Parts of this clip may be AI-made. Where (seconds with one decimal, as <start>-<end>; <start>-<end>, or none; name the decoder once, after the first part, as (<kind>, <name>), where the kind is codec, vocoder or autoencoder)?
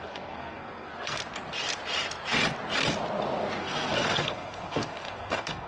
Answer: 0.0-1.2 (codec, SNAC); 3.6-5.7